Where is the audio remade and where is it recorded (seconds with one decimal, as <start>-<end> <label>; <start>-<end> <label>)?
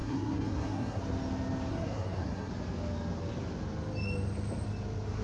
0.0-1.0 remade; 1.0-1.7 recorded; 1.7-2.5 remade; 2.5-5.2 recorded